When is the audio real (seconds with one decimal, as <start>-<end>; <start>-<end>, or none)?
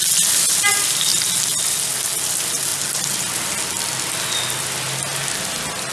0.0-5.9